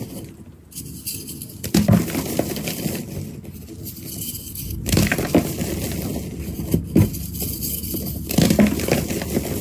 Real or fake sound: real